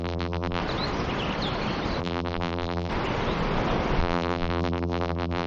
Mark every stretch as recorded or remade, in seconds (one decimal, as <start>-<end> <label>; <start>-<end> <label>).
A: 0.0-0.6 remade; 0.6-2.0 recorded; 2.0-2.9 remade; 2.9-4.0 recorded; 4.0-5.5 remade